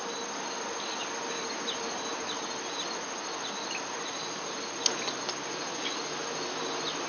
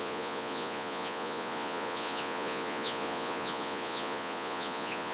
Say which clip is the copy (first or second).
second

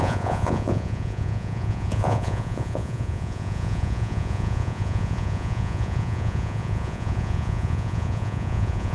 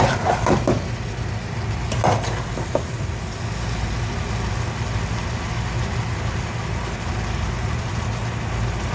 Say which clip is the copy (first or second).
first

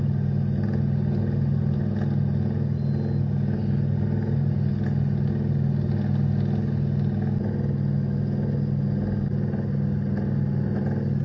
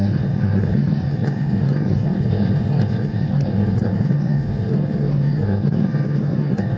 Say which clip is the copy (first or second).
second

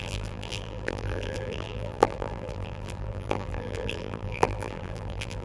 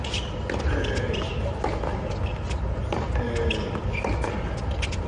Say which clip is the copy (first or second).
first